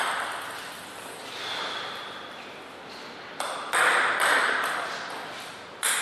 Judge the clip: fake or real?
real